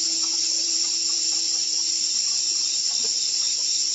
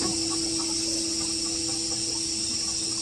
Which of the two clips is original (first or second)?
second